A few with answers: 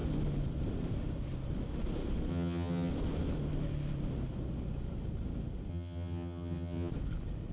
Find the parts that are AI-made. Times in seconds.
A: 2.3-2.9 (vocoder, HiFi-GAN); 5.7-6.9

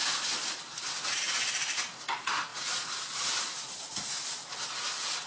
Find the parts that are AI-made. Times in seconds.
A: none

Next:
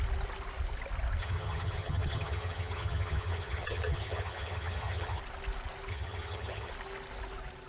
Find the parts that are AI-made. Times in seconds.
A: 1.2-5.2 (vocoder, HiFi-GAN); 5.9-6.7

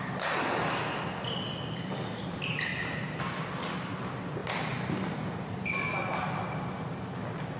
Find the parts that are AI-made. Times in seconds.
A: none